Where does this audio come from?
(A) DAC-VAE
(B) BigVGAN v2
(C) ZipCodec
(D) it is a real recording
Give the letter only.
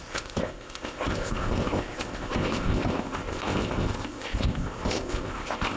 C